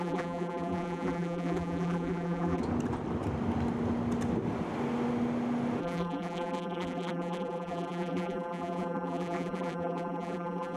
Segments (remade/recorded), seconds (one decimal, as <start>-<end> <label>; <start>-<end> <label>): 0.0-2.6 remade; 2.6-5.8 recorded; 5.8-10.8 remade